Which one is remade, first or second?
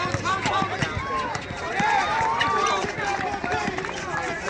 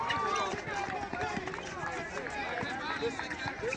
first